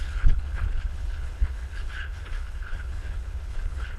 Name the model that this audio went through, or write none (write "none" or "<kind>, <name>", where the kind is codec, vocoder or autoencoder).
codec, HILCodec